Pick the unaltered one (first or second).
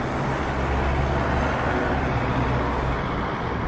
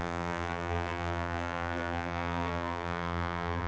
first